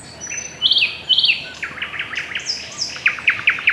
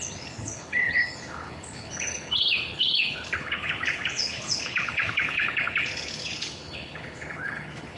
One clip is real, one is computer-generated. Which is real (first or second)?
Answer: first